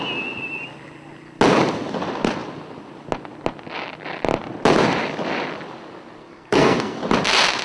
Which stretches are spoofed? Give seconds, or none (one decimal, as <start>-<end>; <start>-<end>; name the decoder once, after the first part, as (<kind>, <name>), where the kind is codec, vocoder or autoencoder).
6.2-7.0 (codec, SNAC)